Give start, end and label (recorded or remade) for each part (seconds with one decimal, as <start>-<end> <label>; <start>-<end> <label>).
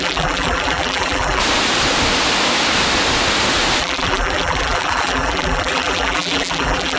0.0-1.4 remade; 1.4-3.8 recorded; 3.8-7.0 remade